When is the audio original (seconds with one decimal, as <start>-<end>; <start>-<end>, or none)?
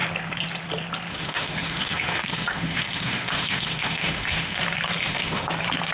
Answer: 0.0-1.1; 4.6-5.0; 5.5-5.9